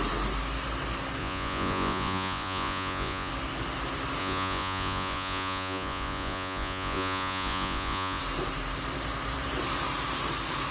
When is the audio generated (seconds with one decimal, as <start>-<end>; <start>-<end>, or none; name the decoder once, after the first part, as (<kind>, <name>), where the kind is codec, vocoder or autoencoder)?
1.2-3.3 (vocoder, Vocos); 4.2-8.2